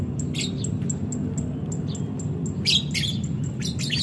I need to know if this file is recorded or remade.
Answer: recorded